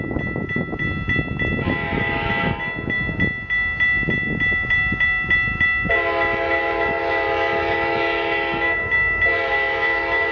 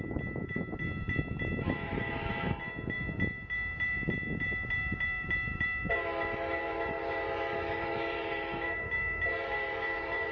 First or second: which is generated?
second